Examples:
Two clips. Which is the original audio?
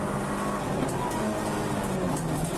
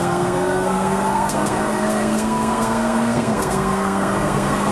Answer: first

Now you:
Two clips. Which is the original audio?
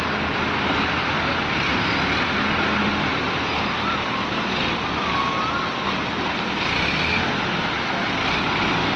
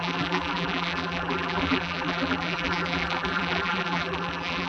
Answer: first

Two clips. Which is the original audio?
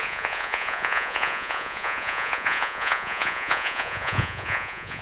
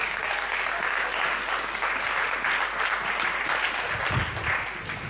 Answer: second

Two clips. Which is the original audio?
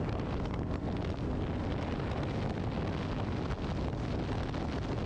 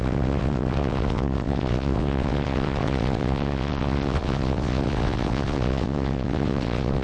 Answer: first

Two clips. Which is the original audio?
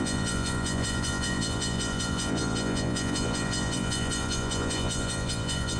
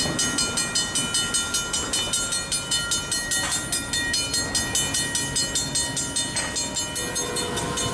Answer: second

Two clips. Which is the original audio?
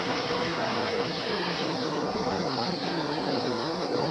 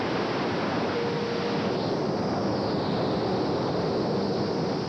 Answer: second